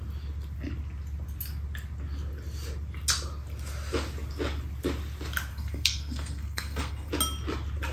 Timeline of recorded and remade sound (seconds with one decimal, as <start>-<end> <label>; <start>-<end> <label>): 0.0-5.5 recorded; 5.5-7.1 remade; 7.1-7.9 recorded